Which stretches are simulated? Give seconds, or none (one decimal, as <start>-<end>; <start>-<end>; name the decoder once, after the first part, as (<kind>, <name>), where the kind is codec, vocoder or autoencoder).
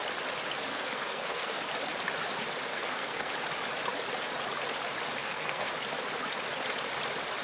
0.7-1.6 (codec, SNAC); 2.7-3.3; 5.2-5.7